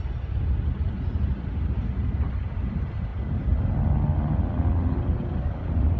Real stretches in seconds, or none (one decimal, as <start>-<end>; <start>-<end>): 0.0-6.0